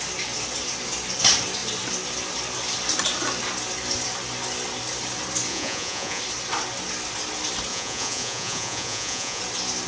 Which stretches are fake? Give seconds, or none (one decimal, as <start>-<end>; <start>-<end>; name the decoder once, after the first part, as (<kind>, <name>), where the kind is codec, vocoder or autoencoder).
5.5-6.2 (vocoder, Vocos); 7.7-9.4